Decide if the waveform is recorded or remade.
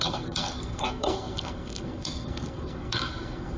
remade